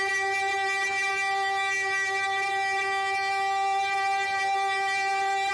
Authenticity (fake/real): real